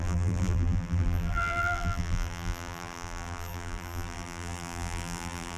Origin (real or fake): fake